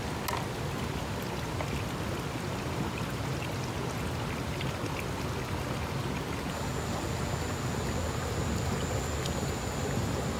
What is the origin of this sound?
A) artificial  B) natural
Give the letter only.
B